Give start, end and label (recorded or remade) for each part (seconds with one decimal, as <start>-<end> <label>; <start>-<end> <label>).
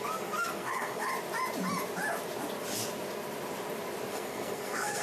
0.0-1.1 remade; 1.1-4.1 recorded; 4.1-5.0 remade